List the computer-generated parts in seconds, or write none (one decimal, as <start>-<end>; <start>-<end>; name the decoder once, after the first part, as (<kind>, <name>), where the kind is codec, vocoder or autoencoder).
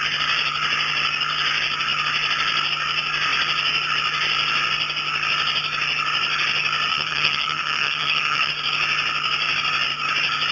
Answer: 6.9-8.5 (vocoder, HiFi-GAN)